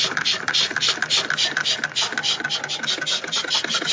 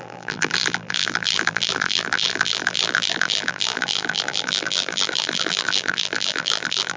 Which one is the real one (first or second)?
first